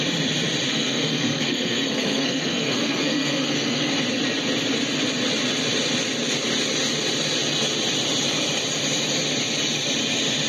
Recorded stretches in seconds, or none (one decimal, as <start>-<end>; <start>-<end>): 0.0-0.7; 3.9-10.5

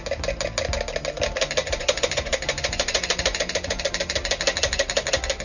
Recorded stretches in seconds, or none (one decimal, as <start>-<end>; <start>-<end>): 0.0-1.6; 3.8-5.4

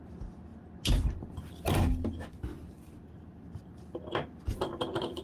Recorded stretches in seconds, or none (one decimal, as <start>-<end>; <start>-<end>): 0.0-5.2

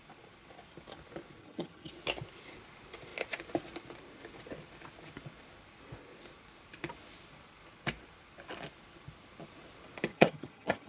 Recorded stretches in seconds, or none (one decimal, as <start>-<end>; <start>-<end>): 0.0-1.4; 1.9-10.1